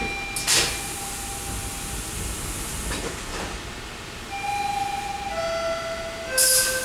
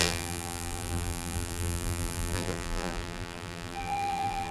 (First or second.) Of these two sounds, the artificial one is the second